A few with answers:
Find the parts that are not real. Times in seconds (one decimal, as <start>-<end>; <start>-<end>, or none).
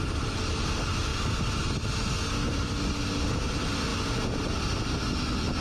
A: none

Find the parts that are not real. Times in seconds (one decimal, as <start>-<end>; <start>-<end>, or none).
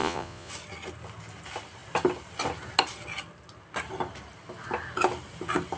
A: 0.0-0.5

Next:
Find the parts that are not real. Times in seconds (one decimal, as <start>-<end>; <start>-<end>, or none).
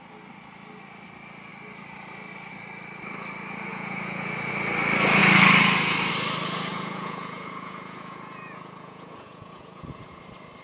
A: 3.7-4.5; 6.7-10.2